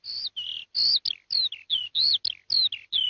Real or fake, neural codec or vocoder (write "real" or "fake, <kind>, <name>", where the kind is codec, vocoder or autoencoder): real